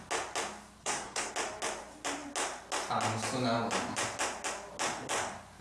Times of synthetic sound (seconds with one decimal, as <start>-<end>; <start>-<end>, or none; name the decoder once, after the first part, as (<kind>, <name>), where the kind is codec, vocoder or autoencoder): 0.8-1.3 (codec, SNAC)